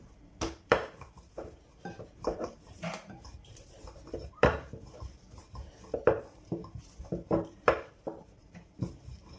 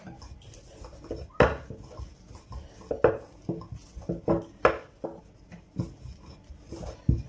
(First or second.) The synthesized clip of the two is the first